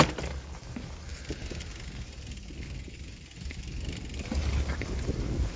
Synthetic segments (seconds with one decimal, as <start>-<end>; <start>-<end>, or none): none